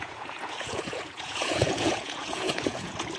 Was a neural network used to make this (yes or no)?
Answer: yes